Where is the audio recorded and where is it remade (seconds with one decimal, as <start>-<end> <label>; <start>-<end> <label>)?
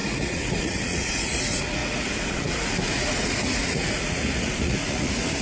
0.0-5.4 remade